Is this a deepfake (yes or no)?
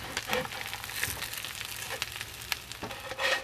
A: no